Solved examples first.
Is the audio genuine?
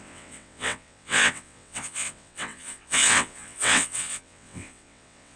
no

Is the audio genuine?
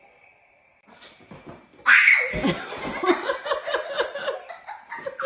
yes